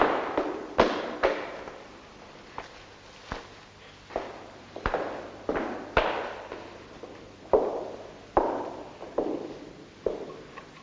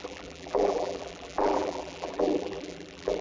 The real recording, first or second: first